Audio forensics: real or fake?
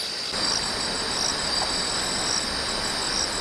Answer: real